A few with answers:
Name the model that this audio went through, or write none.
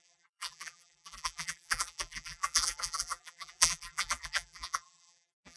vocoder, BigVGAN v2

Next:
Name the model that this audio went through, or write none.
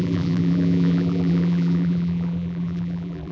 vocoder, BigVGAN v2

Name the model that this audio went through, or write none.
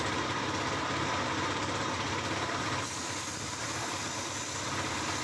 vocoder, BigVGAN v2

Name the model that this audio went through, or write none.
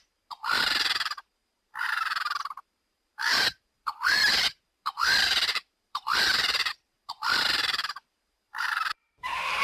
vocoder, BigVGAN v2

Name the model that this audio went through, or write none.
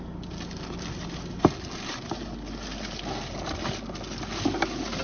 none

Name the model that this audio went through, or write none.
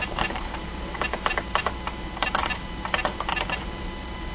vocoder, BigVGAN v2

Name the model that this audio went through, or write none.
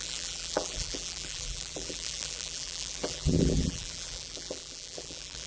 vocoder, BigVGAN v2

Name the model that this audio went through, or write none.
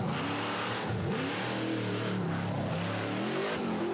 none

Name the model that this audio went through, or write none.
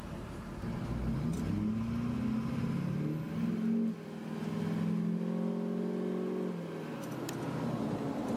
none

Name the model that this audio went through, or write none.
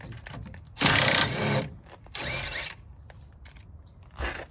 vocoder, BigVGAN v2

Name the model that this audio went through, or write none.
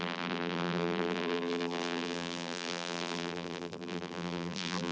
vocoder, BigVGAN v2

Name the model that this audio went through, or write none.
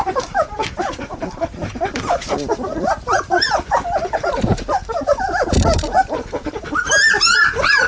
vocoder, BigVGAN v2